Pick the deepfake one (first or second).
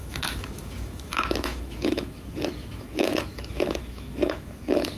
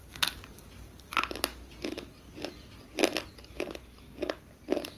first